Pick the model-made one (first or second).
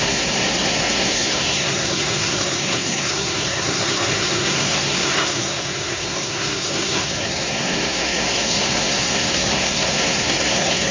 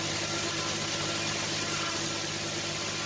first